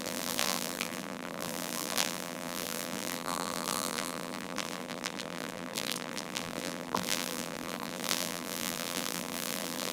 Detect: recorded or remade remade